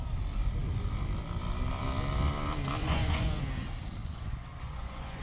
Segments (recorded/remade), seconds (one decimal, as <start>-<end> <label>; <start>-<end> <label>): 0.0-2.8 recorded; 2.8-3.4 remade; 3.4-4.0 recorded; 4.0-5.2 remade